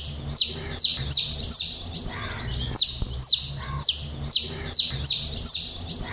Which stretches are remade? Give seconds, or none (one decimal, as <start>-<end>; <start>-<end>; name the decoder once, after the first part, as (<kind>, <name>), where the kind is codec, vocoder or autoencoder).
none